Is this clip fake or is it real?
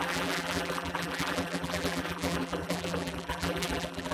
fake